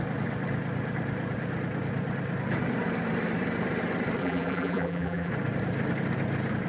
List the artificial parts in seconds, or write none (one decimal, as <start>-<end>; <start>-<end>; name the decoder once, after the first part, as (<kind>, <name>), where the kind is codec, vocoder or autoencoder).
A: 4.2-5.3 (vocoder, BigVGAN v2)